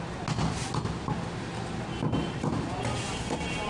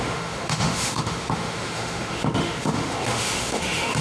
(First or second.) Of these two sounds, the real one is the first